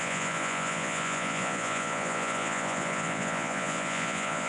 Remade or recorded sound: remade